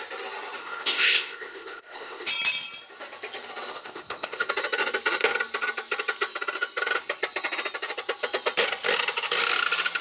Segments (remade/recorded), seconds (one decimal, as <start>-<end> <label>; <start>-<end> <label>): 0.0-0.6 recorded; 0.6-2.3 remade; 2.3-3.7 recorded; 3.7-4.5 remade; 4.5-10.0 recorded